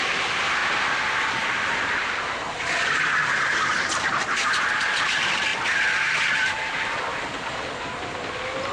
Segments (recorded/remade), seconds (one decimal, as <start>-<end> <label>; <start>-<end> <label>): 0.0-0.6 recorded; 0.6-3.0 remade; 3.0-8.7 recorded